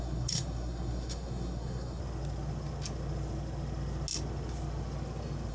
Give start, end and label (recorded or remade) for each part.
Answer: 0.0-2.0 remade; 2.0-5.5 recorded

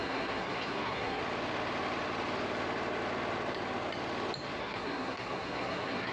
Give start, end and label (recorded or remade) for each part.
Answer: 0.0-1.2 remade; 1.2-4.6 recorded; 4.6-6.1 remade

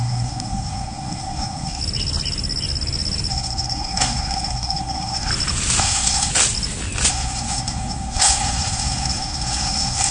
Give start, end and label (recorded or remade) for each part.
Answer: 0.0-1.8 remade; 1.8-3.3 recorded; 3.3-5.3 remade; 5.3-5.8 recorded; 5.8-6.3 remade; 6.3-7.1 recorded; 7.1-10.1 remade

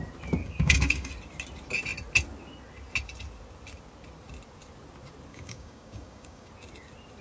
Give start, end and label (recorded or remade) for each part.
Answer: 0.0-0.4 recorded; 0.4-1.1 remade; 1.1-5.3 recorded; 5.3-6.5 remade; 6.5-7.2 recorded

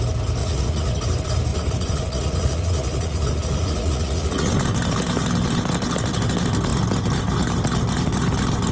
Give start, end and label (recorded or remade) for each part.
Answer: 0.0-0.4 recorded; 0.4-1.0 remade; 1.0-1.5 recorded; 1.5-4.5 remade; 4.5-8.7 recorded

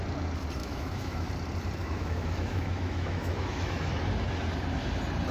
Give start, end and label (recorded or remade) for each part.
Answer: 0.0-0.6 recorded; 0.6-1.3 remade; 1.3-1.8 recorded; 1.8-3.9 remade; 3.9-5.3 recorded

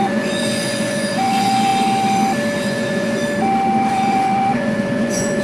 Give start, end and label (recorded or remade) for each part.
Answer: 0.0-1.7 remade; 1.7-2.6 recorded; 2.6-3.2 remade; 3.2-3.9 recorded; 3.9-5.4 remade